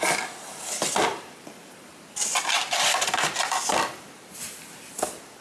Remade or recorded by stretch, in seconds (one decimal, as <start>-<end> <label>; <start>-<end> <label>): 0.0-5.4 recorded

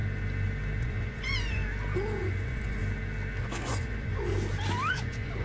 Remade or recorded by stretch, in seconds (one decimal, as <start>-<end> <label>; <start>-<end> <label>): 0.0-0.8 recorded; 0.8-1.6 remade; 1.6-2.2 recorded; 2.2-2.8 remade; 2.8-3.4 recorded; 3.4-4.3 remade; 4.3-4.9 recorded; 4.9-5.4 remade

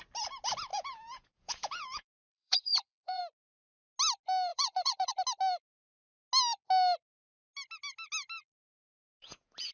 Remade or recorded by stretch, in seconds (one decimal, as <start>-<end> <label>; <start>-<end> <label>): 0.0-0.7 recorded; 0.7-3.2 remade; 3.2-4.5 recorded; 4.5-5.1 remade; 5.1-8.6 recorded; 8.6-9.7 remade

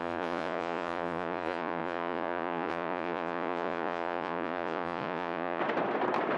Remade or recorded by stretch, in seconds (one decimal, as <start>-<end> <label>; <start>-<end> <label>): 0.0-5.6 remade; 5.6-6.4 recorded